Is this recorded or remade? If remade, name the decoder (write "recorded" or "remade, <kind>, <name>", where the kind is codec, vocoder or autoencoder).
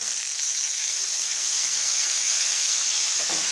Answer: remade, codec, SNAC